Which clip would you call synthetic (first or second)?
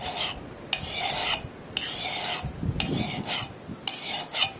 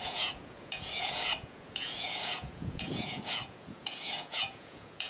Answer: second